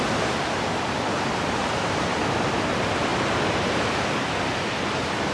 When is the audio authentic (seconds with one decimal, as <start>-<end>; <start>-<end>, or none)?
0.0-1.6; 2.2-5.3